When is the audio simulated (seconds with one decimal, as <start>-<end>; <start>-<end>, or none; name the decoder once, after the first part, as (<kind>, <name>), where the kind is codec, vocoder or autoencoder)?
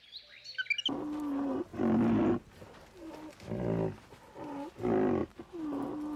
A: none